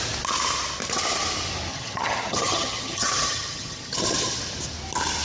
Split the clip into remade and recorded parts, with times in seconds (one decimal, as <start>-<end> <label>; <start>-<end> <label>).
0.0-1.7 recorded; 1.7-4.4 remade; 4.4-5.2 recorded